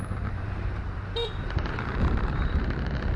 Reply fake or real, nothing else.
fake